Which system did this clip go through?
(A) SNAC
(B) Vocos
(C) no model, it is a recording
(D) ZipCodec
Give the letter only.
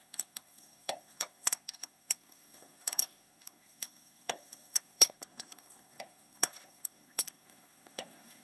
A